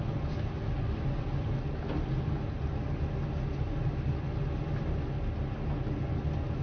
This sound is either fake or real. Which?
real